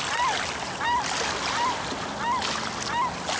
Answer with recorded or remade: recorded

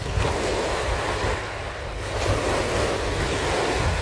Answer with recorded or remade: recorded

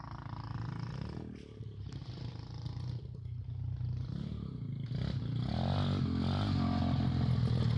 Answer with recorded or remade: recorded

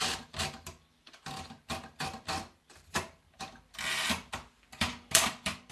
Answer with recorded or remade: remade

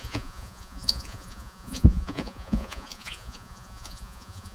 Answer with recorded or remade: remade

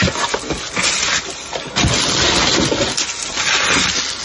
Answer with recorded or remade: recorded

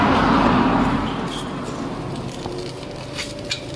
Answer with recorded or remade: recorded